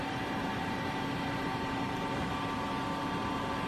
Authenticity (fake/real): fake